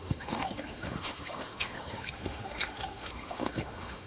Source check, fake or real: fake